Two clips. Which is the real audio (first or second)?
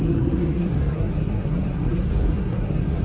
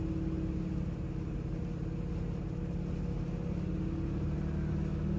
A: second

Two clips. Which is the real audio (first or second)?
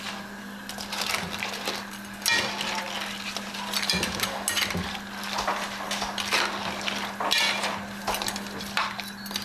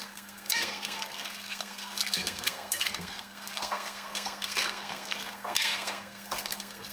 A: first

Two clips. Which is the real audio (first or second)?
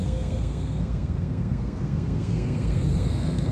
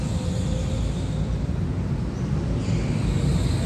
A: second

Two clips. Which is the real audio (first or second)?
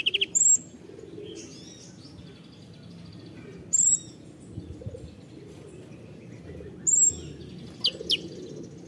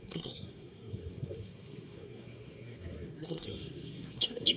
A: first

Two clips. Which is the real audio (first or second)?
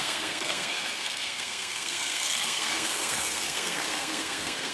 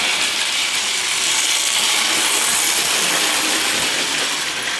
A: second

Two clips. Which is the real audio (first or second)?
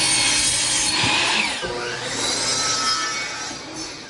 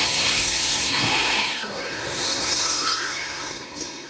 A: first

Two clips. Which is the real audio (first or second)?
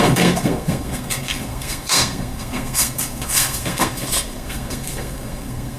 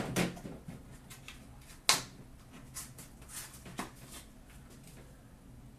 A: second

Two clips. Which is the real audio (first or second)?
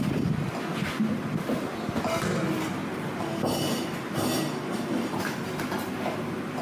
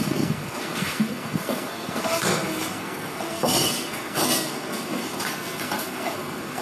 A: first